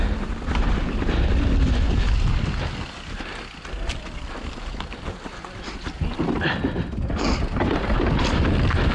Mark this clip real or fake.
real